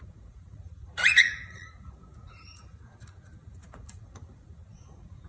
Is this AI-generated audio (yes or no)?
yes